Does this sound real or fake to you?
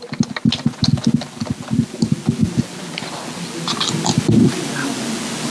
real